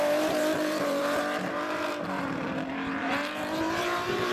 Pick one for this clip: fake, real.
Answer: fake